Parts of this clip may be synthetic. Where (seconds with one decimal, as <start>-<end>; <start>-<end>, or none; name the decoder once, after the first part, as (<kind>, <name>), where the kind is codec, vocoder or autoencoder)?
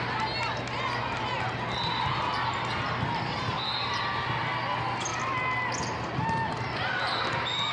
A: none